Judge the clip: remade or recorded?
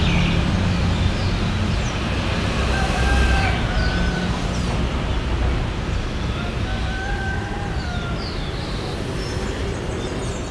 recorded